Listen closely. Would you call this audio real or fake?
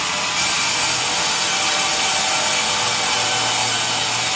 real